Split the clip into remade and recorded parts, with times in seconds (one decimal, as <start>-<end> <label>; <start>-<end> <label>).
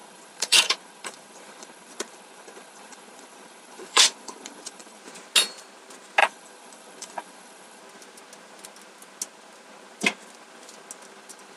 0.0-5.0 remade; 5.0-6.2 recorded; 6.2-7.8 remade; 7.8-11.6 recorded